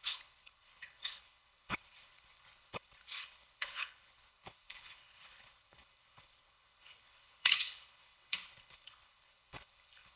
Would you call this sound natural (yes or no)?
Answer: no